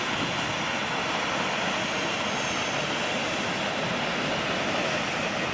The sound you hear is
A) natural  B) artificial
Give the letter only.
A